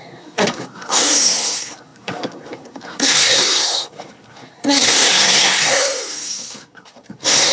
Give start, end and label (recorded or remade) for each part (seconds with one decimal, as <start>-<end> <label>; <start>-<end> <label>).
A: 0.0-7.5 remade